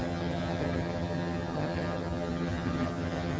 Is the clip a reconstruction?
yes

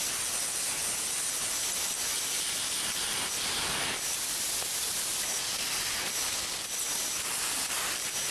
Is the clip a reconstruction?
no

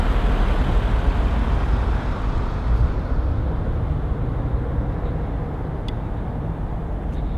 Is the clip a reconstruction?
no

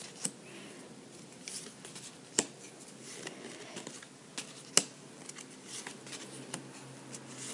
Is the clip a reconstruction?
no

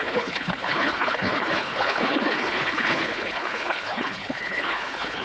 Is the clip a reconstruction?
yes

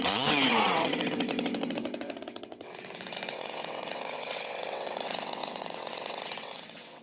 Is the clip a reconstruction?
yes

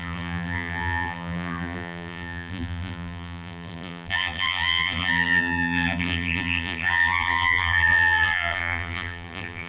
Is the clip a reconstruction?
yes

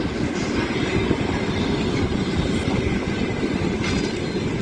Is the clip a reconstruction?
no